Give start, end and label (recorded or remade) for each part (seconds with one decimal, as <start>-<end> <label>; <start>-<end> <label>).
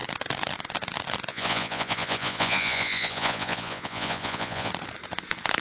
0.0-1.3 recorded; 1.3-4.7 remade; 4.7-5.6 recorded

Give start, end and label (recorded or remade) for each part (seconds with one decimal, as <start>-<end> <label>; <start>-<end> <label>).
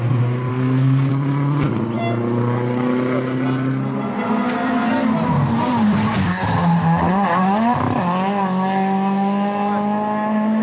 0.0-0.5 recorded; 0.5-1.1 remade; 1.1-10.6 recorded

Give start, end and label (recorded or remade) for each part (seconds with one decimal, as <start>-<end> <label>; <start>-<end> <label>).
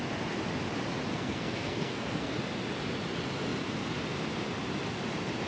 0.0-1.1 recorded; 1.1-2.3 remade; 2.3-5.5 recorded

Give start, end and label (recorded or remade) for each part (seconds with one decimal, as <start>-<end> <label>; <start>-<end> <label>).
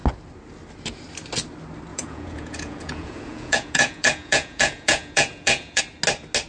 0.0-1.9 recorded; 1.9-5.8 remade; 5.8-6.5 recorded